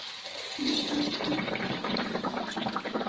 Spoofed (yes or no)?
yes